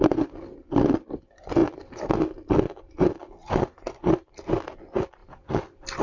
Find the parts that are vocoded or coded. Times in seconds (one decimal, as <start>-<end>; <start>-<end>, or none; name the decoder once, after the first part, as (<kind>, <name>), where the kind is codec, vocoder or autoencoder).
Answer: 3.4-4.3 (vocoder, BigVGAN v2)